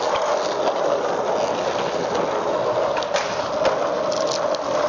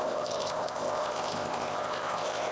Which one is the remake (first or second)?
second